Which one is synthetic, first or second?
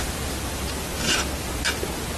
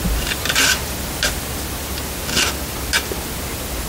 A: first